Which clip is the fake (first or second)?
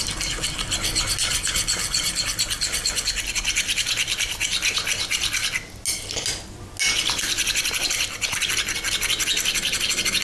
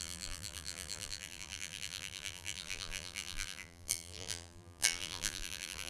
second